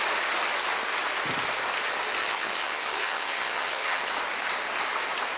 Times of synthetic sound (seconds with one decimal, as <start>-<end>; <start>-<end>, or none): 2.2-4.1